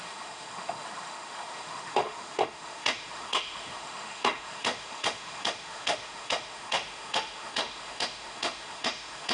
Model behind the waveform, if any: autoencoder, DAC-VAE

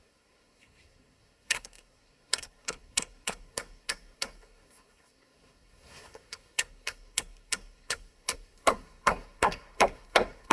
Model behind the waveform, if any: codec, SNAC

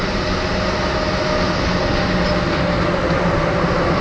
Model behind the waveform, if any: none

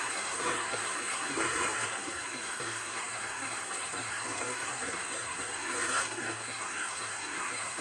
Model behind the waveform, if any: codec, SNAC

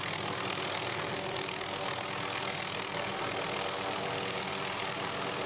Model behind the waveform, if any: none